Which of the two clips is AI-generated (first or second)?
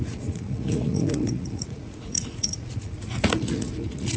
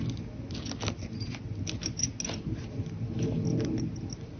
first